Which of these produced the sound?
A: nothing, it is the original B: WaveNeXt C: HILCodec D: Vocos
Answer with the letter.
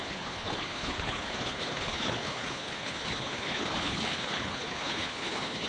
C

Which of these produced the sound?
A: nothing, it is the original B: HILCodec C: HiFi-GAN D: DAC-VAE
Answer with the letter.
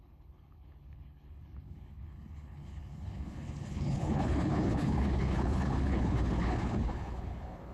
B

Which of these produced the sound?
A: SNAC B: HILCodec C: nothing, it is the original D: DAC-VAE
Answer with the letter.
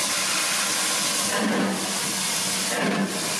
C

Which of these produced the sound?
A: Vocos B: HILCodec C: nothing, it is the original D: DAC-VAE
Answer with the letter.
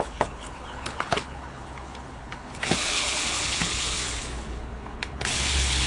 B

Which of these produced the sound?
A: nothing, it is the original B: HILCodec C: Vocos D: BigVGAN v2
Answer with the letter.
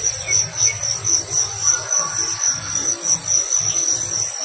A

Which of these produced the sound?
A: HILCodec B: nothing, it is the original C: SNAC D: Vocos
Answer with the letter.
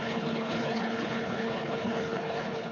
A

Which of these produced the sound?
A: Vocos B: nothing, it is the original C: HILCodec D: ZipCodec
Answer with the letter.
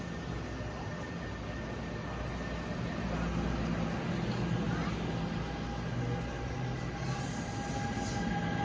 B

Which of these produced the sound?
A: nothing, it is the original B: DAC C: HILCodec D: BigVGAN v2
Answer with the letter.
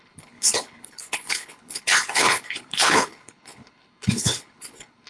C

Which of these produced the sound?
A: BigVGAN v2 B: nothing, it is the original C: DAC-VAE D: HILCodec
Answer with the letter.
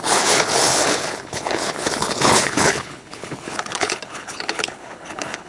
D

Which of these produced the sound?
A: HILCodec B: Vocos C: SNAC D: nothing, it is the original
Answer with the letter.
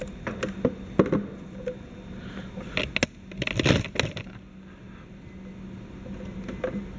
D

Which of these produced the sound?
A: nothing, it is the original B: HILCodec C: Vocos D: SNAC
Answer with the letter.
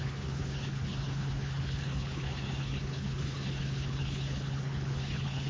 B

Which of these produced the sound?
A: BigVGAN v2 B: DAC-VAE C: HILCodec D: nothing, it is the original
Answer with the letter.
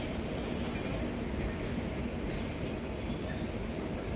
D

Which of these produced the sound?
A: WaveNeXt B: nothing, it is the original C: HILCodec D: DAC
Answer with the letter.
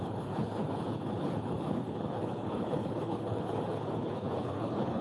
C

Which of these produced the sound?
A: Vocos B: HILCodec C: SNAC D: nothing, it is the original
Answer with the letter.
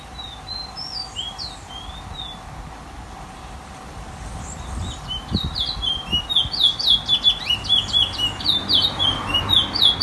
D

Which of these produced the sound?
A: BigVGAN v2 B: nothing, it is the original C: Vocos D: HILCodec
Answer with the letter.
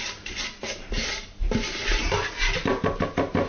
B